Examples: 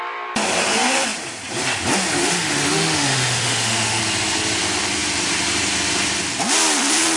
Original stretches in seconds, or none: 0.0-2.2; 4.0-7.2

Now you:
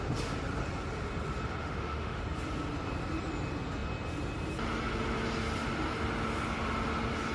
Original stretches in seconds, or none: 0.0-1.6; 2.2-7.3

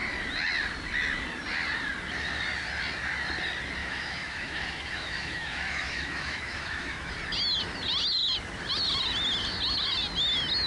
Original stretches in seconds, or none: 0.0-3.8; 7.1-10.7

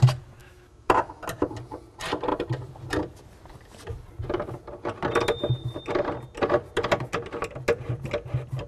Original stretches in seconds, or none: 0.0-0.4; 1.2-8.7